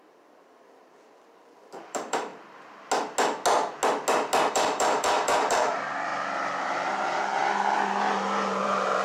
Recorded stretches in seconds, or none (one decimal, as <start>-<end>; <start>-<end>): 2.3-4.5; 6.1-6.6; 7.4-8.6